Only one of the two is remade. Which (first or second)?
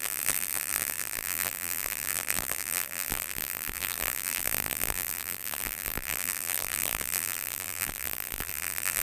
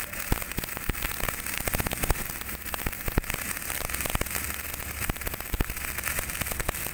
first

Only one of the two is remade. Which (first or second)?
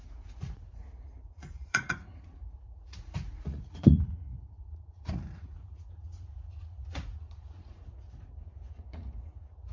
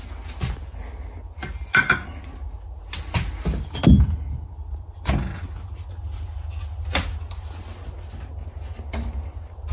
first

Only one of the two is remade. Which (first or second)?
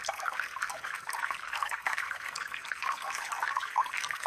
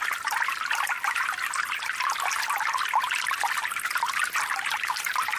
first